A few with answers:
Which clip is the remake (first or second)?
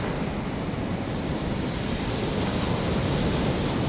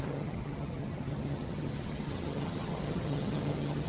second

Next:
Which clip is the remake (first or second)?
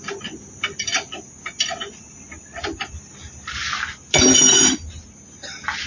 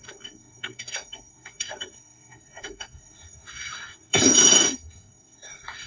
second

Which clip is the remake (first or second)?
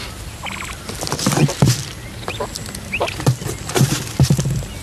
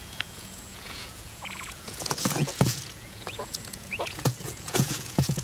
second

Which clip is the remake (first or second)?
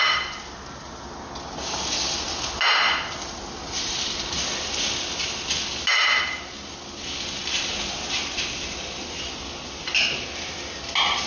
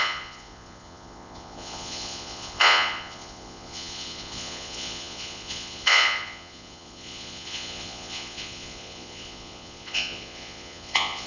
second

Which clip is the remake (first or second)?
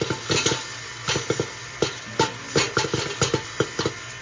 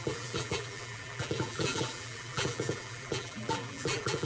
second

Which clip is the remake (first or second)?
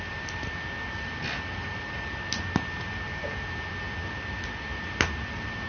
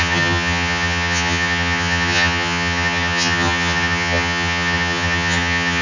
second